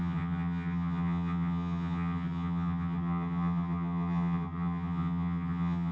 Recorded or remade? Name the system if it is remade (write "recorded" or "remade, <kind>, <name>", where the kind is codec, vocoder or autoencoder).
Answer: remade, vocoder, HiFi-GAN